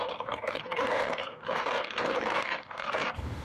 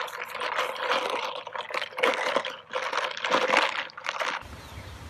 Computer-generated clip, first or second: first